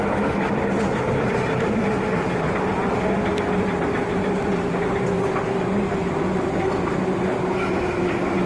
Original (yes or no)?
yes